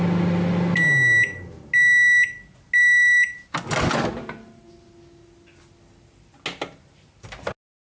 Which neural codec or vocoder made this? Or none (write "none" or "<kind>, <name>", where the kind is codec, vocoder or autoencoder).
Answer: none